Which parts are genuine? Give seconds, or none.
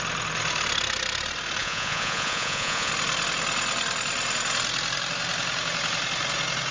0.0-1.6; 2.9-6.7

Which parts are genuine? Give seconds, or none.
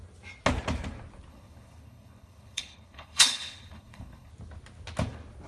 0.0-1.3; 4.3-5.5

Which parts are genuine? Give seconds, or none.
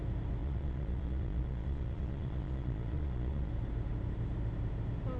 0.0-0.4; 3.5-5.2